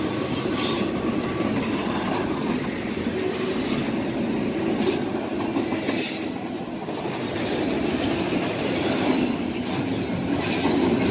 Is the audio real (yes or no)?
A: yes